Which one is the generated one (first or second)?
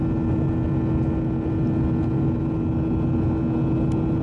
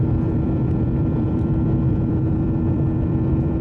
second